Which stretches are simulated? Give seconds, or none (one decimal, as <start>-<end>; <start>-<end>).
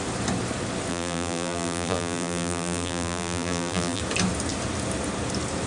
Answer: 0.9-4.0